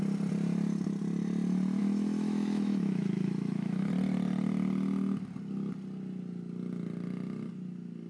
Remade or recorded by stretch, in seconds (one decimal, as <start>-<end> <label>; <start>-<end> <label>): 0.0-1.8 recorded; 1.8-3.9 remade; 3.9-8.1 recorded